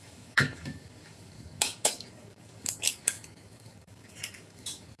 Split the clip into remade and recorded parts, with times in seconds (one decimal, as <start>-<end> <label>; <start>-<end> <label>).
0.0-5.0 remade

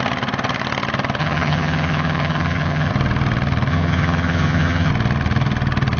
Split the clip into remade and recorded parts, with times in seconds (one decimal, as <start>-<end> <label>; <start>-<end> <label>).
0.0-1.2 recorded; 1.2-2.9 remade; 2.9-3.7 recorded; 3.7-4.9 remade; 4.9-6.0 recorded

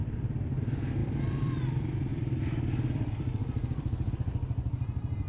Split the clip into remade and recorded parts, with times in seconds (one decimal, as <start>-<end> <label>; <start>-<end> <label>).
0.0-0.6 remade; 0.6-1.0 recorded; 1.0-1.6 remade; 1.6-2.1 recorded; 2.1-4.1 remade; 4.1-5.3 recorded

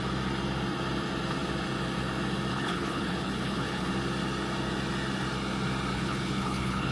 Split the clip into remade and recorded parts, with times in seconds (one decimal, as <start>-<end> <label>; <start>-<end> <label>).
0.0-2.5 recorded; 2.5-3.9 remade; 3.9-5.9 recorded; 5.9-6.9 remade

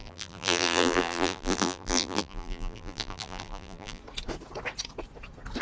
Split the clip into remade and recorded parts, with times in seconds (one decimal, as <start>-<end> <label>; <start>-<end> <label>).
0.0-4.0 remade; 4.0-5.6 recorded

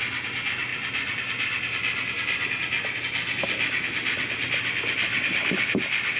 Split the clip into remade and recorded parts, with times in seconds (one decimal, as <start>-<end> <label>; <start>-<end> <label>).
0.0-6.2 recorded